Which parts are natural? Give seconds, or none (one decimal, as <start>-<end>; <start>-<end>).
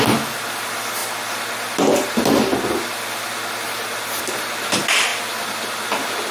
0.0-6.3